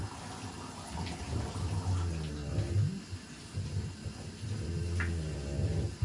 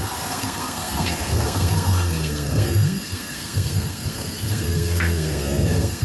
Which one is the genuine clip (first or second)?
first